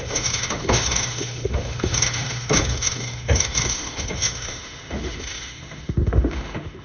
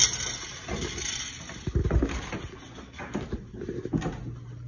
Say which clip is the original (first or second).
second